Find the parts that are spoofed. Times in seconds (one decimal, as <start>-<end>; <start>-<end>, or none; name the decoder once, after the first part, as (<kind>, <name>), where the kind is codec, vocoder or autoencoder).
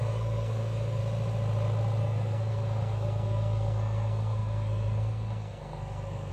0.0-1.0 (codec, SNAC); 2.0-6.3